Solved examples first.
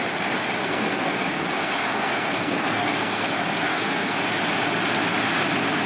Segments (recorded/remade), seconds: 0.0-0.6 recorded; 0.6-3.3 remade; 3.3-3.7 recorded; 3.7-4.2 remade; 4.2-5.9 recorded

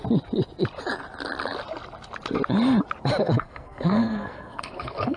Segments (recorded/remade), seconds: 0.0-3.2 recorded; 3.2-5.2 remade

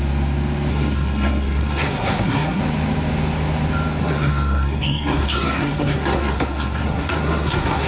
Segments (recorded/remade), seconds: 0.0-0.7 recorded; 0.7-2.6 remade; 2.6-4.0 recorded; 4.0-7.9 remade

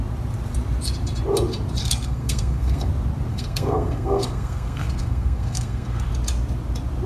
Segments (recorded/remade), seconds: 0.0-1.8 recorded; 1.8-2.9 remade; 2.9-3.3 recorded; 3.3-6.1 remade; 6.1-7.1 recorded

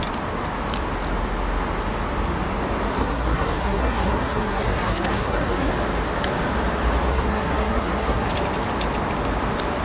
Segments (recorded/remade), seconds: 0.0-3.0 recorded; 3.0-5.7 remade; 5.7-7.1 recorded; 7.1-8.3 remade; 8.3-9.8 recorded

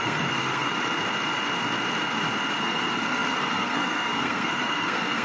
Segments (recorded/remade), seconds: 0.0-0.7 remade; 0.7-2.6 recorded; 2.6-5.2 remade

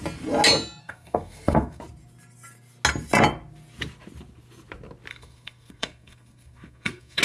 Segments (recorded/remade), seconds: 0.0-0.8 recorded; 0.8-1.8 remade; 1.8-5.1 recorded; 5.1-7.2 remade